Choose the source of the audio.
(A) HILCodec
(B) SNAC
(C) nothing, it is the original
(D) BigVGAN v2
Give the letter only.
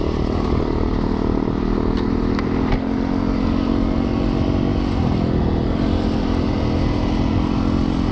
C